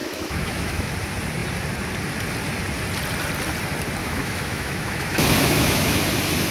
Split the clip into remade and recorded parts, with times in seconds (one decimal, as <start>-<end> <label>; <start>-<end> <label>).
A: 0.0-0.9 remade; 0.9-4.0 recorded; 4.0-6.0 remade; 6.0-6.5 recorded